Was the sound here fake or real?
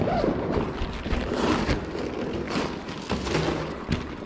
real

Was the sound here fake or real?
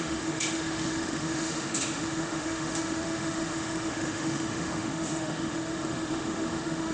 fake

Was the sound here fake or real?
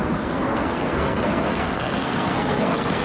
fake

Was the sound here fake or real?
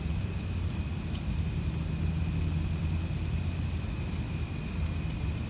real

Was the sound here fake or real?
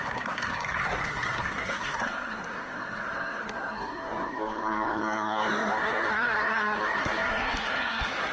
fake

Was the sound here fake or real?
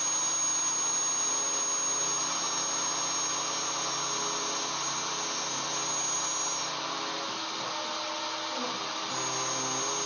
real